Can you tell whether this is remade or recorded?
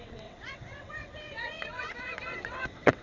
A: remade